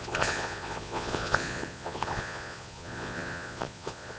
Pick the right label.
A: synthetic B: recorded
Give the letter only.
A